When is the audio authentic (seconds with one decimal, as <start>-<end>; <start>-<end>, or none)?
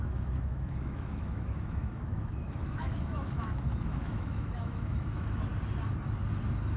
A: 5.5-6.8